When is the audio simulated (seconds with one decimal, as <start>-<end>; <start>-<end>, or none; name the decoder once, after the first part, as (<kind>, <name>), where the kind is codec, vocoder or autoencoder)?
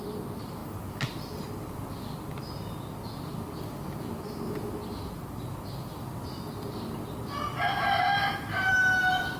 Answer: none